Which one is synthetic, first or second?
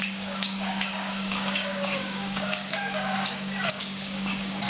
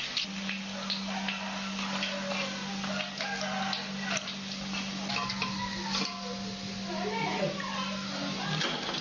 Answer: first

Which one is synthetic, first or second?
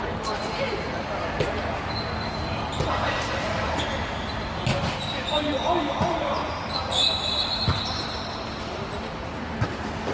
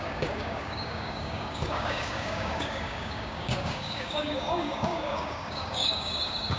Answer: second